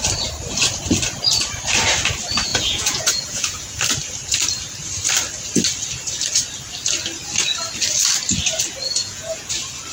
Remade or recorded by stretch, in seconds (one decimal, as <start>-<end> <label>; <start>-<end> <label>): 0.0-2.5 recorded; 2.5-3.8 remade; 3.8-9.0 recorded; 9.0-9.5 remade; 9.5-9.9 recorded